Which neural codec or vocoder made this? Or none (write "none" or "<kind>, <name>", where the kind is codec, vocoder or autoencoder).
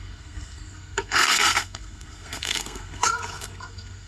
codec, SNAC